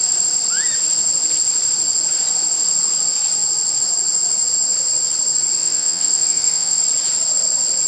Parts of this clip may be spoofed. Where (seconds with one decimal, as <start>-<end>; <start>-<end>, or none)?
5.6-6.8